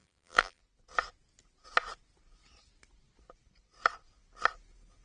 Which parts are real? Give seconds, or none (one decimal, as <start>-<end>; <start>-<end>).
0.6-5.0